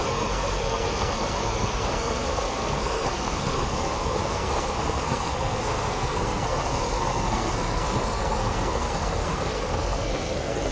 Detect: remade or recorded remade